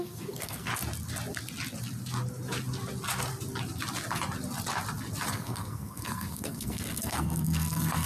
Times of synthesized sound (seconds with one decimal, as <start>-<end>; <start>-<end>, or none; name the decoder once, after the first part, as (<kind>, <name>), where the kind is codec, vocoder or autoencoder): 0.0-0.7 (codec, SNAC); 5.3-8.1